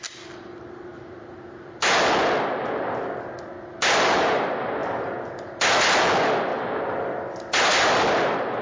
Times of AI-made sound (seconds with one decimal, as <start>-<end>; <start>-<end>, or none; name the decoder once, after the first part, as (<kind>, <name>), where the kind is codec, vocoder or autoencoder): 0.9-1.8 (vocoder, BigVGAN v2); 4.8-6.0; 6.5-8.6